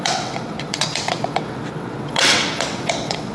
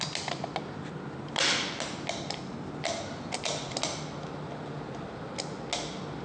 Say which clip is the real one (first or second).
second